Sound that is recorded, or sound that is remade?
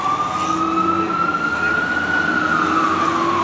recorded